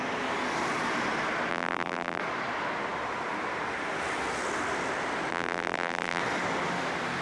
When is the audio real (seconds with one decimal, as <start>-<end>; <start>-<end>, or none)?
0.0-1.5; 2.2-5.3; 6.2-7.2